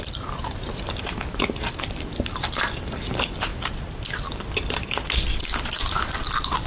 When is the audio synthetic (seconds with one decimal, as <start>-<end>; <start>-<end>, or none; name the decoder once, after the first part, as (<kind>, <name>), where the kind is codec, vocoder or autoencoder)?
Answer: 0.0-6.7 (vocoder, BigVGAN v2)